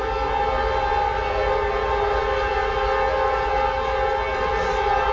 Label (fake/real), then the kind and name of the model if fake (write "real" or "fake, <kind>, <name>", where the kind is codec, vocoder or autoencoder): real